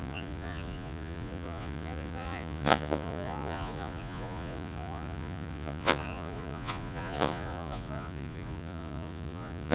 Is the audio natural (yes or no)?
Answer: no